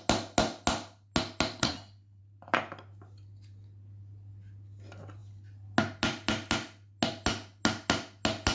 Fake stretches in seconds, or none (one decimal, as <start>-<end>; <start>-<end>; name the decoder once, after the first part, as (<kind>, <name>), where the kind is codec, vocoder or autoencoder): 1.6-2.2 (codec, SNAC)

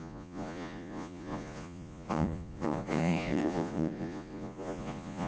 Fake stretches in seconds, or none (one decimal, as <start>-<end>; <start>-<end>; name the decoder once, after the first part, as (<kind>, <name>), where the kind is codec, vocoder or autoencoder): 0.0-5.3 (vocoder, Vocos)

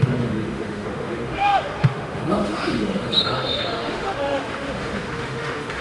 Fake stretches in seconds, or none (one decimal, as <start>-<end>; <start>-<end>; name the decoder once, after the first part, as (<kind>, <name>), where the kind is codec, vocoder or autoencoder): 0.0-5.8 (autoencoder, DAC-VAE)

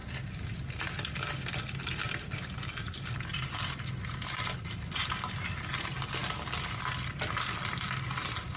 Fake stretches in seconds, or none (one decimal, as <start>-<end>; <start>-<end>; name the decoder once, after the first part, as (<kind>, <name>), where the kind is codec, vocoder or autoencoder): none